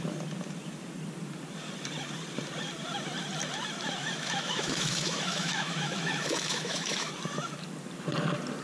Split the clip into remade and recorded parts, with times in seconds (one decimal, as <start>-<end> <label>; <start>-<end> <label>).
0.0-4.0 recorded; 4.0-7.1 remade; 7.1-8.6 recorded